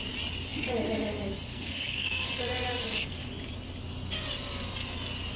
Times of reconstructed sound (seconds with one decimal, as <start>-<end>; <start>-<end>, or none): 1.5-2.3; 2.7-3.2